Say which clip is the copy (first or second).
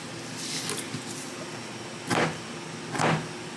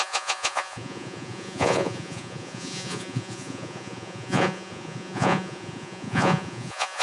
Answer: second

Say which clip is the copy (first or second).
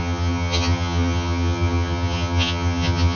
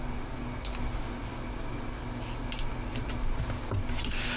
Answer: first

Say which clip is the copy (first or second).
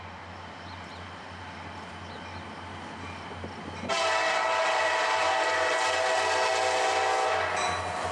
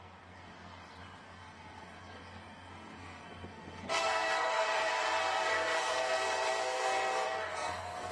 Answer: second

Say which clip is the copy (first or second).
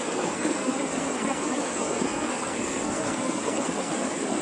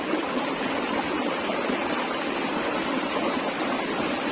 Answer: first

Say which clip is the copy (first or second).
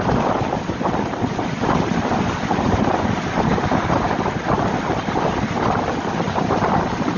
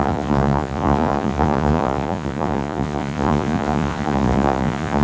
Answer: second